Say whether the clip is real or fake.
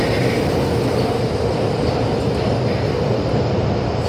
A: real